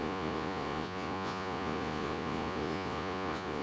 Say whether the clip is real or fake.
fake